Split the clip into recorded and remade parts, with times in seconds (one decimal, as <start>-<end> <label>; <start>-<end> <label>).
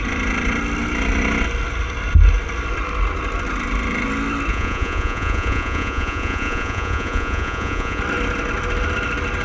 0.0-4.5 recorded; 4.5-8.0 remade; 8.0-9.4 recorded